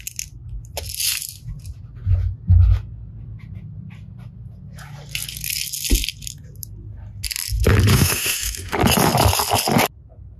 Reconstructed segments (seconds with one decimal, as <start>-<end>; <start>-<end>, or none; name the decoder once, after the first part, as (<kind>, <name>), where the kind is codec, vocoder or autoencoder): 7.9-8.8 (autoencoder, DAC-VAE)

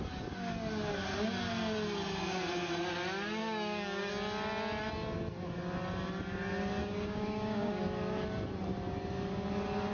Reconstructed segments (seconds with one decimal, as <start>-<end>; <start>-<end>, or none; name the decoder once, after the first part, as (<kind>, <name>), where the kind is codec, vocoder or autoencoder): 3.4-4.1 (codec, DAC); 6.8-7.8

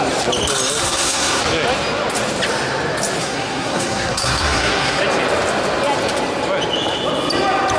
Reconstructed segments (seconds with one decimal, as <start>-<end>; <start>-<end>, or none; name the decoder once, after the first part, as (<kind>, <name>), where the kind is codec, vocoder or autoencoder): 0.8-1.4 (codec, SNAC); 3.2-5.0

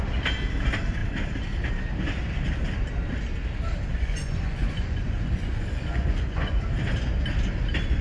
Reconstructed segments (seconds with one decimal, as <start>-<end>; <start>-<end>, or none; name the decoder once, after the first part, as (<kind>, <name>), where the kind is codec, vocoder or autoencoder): 3.9-6.6 (vocoder, Vocos)

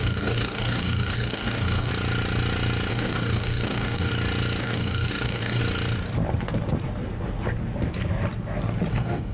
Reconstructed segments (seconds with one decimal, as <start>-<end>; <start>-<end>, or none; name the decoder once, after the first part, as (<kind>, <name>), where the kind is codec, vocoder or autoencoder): 0.0-1.9 (codec, DAC); 2.9-4.1; 4.6-5.6; 8.9-9.3

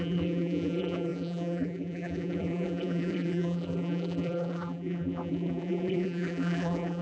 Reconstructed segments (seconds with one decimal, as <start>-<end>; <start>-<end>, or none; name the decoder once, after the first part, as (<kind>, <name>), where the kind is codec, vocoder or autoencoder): 0.0-7.0 (vocoder, BigVGAN v2)

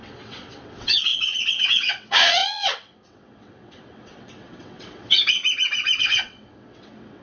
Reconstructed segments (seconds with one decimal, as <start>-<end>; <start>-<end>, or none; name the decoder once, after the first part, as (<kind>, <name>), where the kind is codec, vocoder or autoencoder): 0.0-5.4 (vocoder, WaveNeXt); 6.0-7.2

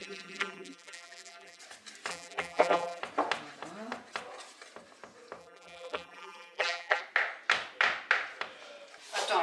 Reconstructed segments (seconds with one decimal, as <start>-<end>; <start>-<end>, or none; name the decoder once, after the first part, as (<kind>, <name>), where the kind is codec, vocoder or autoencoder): 0.0-1.6 (vocoder, BigVGAN v2); 2.1-3.0; 5.4-7.0